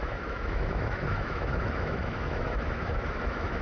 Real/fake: fake